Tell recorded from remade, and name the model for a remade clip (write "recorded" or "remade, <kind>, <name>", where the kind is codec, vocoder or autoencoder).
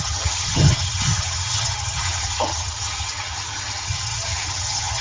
remade, vocoder, HiFi-GAN